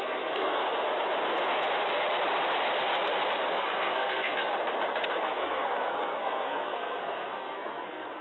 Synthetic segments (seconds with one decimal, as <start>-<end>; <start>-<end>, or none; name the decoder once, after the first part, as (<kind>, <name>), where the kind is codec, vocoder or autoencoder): 0.0-0.6 (codec, SNAC); 3.5-4.4; 5.2-8.2